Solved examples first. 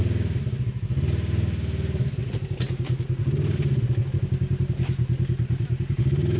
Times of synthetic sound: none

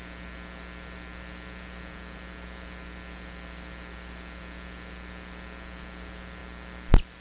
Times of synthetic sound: none

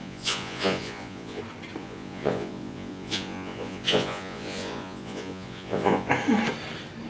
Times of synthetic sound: 0.0-1.4 (vocoder, Vocos); 1.8-6.1

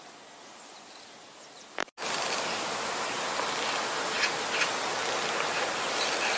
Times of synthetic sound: none